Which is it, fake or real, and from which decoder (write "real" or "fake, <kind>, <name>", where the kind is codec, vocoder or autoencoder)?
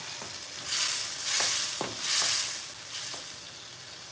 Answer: real